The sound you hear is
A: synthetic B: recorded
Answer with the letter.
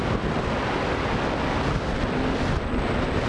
B